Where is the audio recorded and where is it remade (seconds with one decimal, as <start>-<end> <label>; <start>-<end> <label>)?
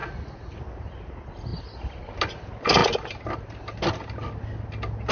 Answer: 0.0-0.6 remade; 0.6-5.1 recorded